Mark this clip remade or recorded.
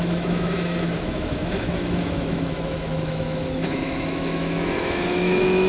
remade